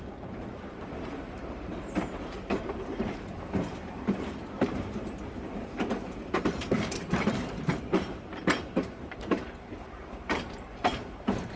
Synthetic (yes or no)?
yes